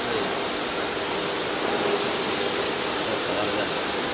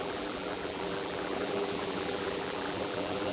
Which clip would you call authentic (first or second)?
first